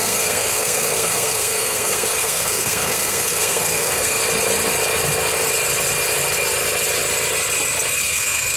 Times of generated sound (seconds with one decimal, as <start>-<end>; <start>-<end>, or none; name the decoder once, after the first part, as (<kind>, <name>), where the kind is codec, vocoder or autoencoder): 0.0-4.2 (codec, SNAC); 8.0-8.6